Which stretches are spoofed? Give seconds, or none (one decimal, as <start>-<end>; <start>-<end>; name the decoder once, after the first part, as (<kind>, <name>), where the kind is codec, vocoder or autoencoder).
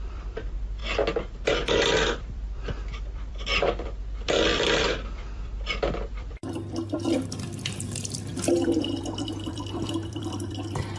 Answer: 0.0-0.8 (vocoder, BigVGAN v2); 2.2-11.0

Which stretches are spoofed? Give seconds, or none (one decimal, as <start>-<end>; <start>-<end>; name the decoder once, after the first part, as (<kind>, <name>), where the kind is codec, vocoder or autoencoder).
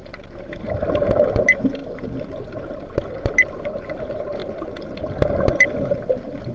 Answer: 0.0-4.4 (vocoder, BigVGAN v2); 6.0-6.5